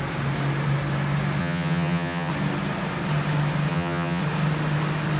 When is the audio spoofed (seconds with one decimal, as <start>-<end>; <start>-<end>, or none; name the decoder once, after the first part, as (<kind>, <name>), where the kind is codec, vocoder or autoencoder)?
1.4-2.3 (vocoder, HiFi-GAN); 3.7-4.2